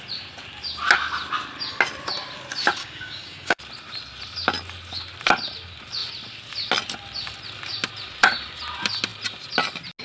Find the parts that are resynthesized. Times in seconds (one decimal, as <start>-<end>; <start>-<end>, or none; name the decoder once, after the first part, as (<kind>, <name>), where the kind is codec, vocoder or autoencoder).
2.8-3.6 (codec, DAC)